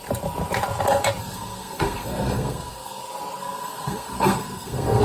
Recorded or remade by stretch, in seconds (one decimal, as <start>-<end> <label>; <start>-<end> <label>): 0.0-1.2 recorded; 1.2-3.0 remade; 3.0-3.4 recorded; 3.4-5.0 remade